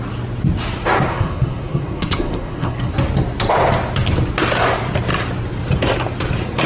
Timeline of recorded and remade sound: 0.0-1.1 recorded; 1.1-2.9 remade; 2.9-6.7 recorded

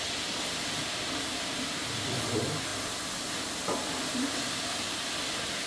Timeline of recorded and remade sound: 0.0-5.7 remade

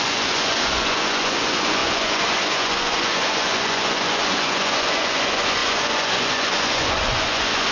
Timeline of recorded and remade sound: 0.0-7.7 remade